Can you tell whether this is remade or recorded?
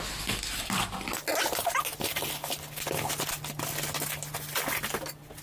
recorded